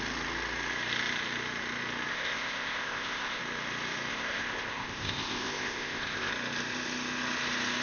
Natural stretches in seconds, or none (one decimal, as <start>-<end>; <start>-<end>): 0.0-2.1; 3.4-4.1; 6.3-7.8